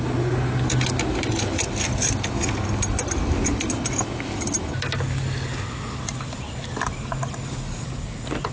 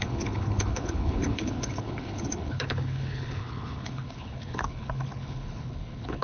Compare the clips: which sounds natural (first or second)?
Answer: first